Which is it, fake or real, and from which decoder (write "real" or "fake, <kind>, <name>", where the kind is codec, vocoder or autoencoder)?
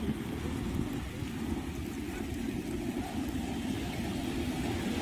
real